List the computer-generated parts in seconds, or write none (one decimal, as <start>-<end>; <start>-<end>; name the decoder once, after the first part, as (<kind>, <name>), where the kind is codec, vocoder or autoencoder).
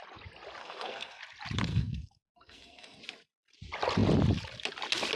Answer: 0.6-1.2 (codec, SNAC); 1.7-3.0